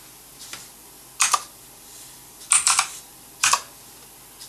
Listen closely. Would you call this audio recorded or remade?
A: recorded